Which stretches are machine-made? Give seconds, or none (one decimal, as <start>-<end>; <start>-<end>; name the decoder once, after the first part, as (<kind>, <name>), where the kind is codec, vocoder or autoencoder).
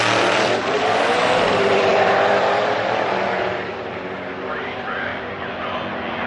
0.0-6.3 (vocoder, BigVGAN v2)